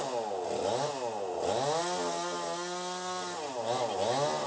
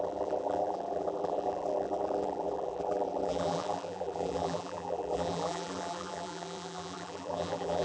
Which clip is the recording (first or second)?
first